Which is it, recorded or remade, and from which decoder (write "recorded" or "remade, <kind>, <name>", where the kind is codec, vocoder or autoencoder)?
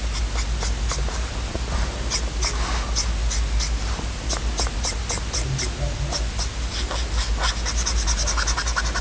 recorded